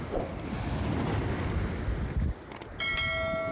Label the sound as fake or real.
real